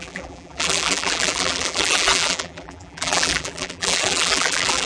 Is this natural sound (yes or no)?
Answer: no